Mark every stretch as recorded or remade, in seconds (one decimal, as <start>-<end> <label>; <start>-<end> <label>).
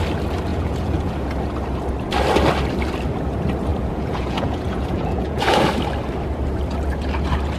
0.0-0.5 recorded; 0.5-1.1 remade; 1.1-3.7 recorded; 3.7-5.7 remade; 5.7-7.6 recorded